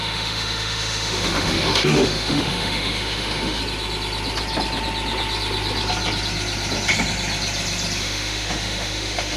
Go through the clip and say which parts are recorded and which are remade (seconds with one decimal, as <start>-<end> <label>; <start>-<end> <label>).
0.0-3.6 remade; 3.6-8.0 recorded; 8.0-9.4 remade